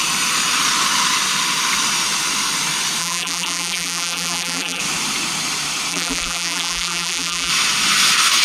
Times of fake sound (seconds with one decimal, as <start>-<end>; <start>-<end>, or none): 3.0-4.8; 5.9-7.5